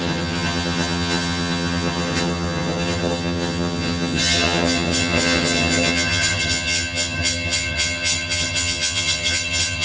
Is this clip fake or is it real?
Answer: fake